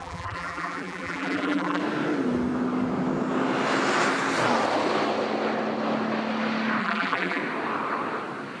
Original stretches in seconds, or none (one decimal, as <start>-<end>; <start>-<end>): 1.8-6.8; 7.4-8.6